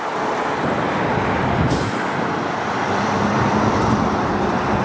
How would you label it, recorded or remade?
recorded